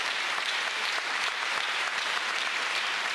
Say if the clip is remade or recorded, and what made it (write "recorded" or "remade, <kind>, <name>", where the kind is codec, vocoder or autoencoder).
remade, vocoder, BigVGAN v2